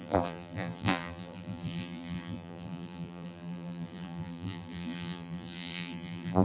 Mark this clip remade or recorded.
remade